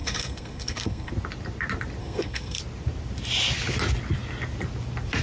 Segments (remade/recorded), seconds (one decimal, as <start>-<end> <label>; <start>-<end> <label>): 0.0-1.1 remade; 1.1-2.0 recorded; 2.0-2.6 remade; 2.6-5.2 recorded